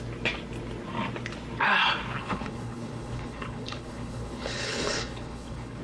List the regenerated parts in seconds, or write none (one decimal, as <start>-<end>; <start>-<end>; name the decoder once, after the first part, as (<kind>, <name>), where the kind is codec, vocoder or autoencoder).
2.2-5.8 (codec, HILCodec)